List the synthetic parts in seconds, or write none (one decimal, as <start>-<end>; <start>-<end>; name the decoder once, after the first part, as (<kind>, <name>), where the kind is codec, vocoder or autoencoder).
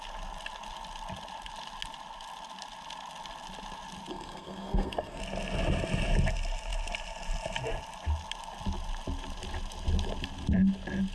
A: 4.1-5.2 (codec, SNAC)